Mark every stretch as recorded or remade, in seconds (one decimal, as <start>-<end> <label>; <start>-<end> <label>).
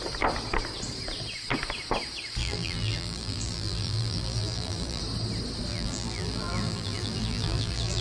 0.0-2.4 recorded; 2.4-5.0 remade; 5.0-5.7 recorded; 5.7-8.0 remade